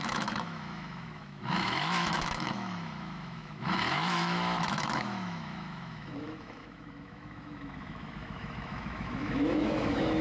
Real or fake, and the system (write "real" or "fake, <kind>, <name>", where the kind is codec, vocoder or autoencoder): fake, autoencoder, DAC-VAE